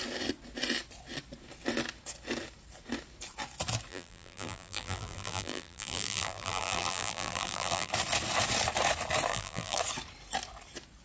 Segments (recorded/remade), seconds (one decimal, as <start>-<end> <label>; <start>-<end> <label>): 0.0-3.9 recorded; 3.9-7.9 remade; 7.9-9.3 recorded; 9.3-9.8 remade; 9.8-11.0 recorded